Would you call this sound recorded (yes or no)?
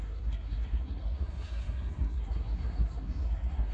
no